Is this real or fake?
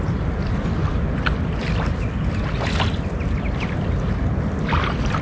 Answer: real